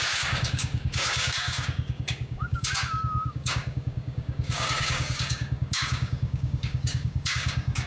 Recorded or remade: remade